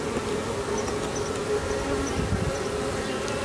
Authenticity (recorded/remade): recorded